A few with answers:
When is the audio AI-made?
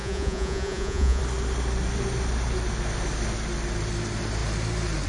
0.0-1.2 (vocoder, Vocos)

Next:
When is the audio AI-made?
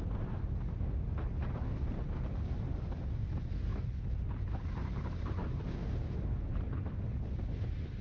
none